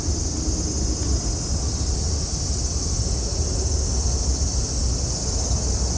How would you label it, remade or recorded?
recorded